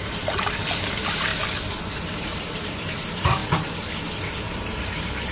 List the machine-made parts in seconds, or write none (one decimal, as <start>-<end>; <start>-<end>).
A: 0.0-1.3; 2.1-3.4; 4.4-5.3